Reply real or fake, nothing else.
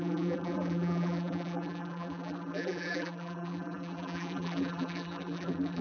fake